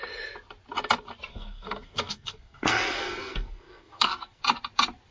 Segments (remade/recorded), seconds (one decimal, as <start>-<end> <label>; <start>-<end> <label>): 0.0-1.3 recorded; 1.3-4.4 remade; 4.4-5.1 recorded